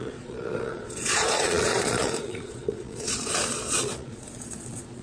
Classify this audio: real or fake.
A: fake